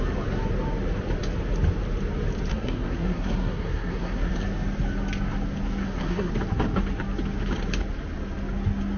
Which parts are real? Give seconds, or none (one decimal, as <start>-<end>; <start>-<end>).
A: 0.0-2.5; 4.3-5.8; 6.3-9.0